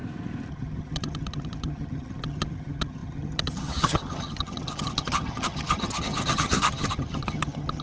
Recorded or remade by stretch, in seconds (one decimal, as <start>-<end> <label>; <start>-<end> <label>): 0.0-0.5 recorded; 0.5-7.8 remade